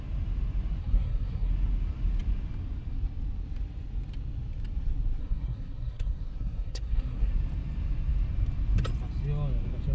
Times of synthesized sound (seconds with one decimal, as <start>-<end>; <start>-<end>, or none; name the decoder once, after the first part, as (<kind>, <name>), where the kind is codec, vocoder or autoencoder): 0.8-1.5 (codec, SNAC); 5.2-7.3